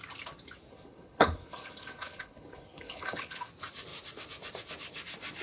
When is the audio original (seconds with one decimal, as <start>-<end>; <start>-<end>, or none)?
0.0-0.7; 3.5-5.4

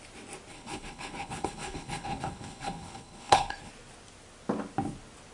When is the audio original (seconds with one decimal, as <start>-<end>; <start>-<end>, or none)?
0.0-0.5; 3.7-5.3